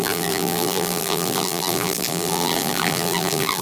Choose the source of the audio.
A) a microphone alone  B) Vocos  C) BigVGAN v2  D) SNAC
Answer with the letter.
C